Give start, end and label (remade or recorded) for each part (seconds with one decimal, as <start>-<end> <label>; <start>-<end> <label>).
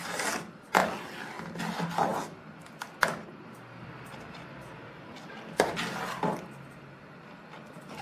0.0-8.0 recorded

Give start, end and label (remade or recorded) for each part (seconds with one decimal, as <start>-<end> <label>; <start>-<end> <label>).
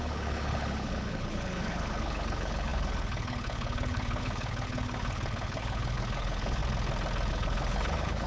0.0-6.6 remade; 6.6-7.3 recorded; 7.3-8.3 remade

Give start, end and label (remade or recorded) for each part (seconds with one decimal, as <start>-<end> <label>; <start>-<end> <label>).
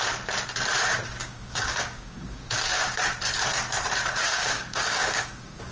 0.0-1.2 recorded; 1.2-3.0 remade; 3.0-4.3 recorded; 4.3-5.7 remade